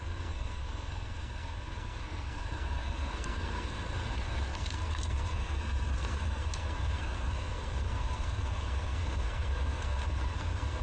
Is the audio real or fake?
fake